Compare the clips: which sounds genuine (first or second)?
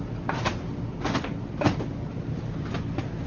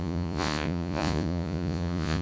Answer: first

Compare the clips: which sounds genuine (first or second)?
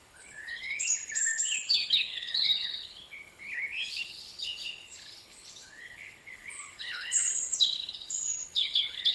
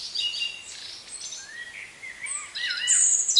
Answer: second